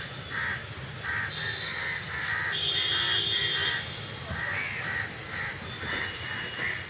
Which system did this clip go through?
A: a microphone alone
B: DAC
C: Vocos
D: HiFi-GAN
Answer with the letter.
A